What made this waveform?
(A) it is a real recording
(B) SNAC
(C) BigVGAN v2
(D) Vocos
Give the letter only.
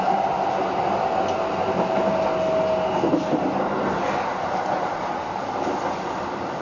A